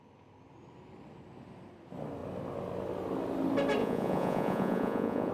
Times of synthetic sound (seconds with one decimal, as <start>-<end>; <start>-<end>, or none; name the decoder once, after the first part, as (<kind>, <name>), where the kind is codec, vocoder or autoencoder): 3.8-5.3 (vocoder, Vocos)